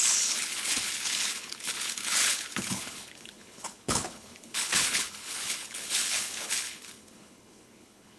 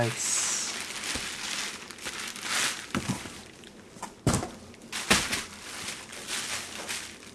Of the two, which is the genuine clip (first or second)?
second